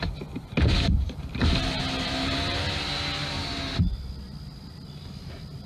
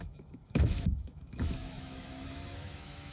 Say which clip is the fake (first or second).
second